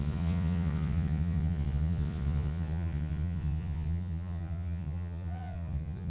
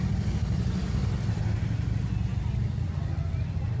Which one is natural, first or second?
second